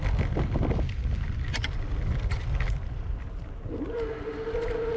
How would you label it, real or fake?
real